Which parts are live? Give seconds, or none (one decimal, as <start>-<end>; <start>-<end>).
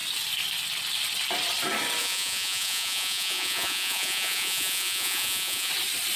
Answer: 0.0-2.0; 5.7-6.2